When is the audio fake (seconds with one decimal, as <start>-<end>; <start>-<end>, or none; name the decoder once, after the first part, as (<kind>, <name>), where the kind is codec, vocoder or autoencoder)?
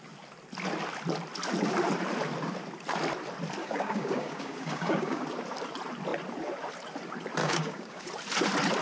3.6-5.2 (codec, DAC); 7.4-8.1